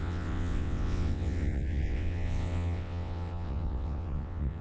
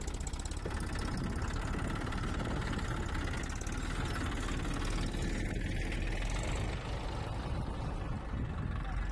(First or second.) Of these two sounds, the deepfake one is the first